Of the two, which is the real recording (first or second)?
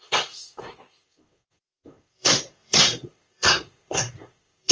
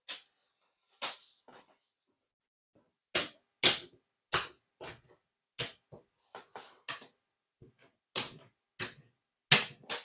second